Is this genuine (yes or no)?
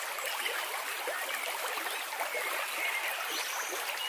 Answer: no